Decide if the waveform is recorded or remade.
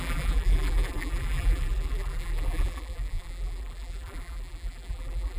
remade